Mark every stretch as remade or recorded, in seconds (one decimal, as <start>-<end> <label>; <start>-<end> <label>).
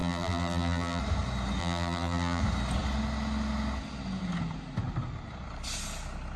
0.0-1.0 remade; 1.0-1.6 recorded; 1.6-2.4 remade; 2.4-6.4 recorded